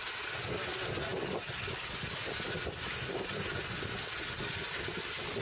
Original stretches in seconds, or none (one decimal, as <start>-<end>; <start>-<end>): 0.0-5.4